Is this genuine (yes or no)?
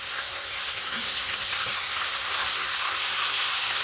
no